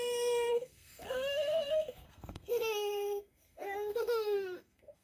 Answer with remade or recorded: remade